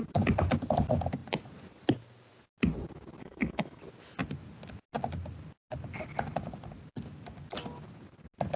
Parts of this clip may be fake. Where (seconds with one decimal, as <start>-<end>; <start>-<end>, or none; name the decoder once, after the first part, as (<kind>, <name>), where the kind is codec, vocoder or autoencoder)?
3.2-3.8 (codec, SNAC)